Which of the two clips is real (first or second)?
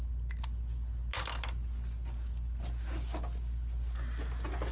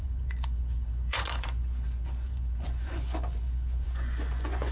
first